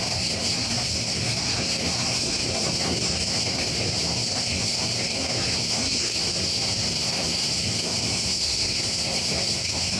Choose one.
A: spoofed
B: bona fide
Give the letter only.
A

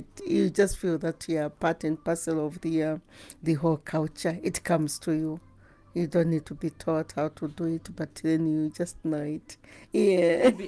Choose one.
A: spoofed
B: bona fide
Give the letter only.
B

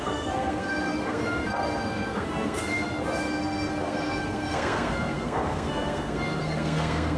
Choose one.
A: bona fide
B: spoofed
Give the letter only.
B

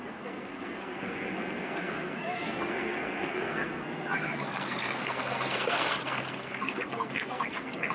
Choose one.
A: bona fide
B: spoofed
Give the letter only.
B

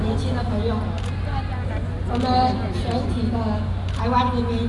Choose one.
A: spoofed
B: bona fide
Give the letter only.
B